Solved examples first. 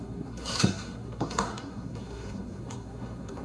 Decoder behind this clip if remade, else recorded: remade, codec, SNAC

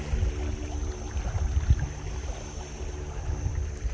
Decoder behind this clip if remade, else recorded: recorded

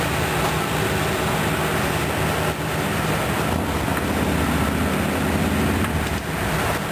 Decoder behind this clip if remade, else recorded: recorded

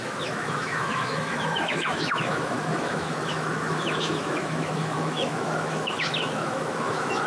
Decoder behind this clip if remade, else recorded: remade, autoencoder, DAC-VAE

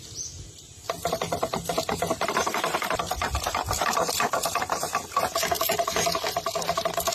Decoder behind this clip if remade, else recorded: recorded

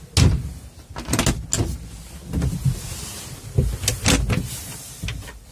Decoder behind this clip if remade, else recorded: recorded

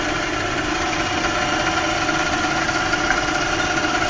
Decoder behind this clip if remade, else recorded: recorded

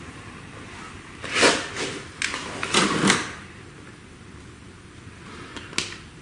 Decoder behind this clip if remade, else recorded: recorded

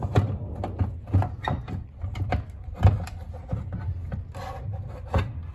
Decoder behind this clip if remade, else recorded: recorded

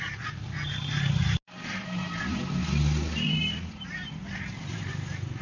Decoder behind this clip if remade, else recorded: recorded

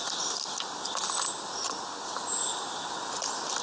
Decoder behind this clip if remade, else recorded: recorded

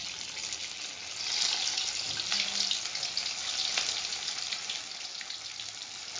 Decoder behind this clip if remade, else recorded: recorded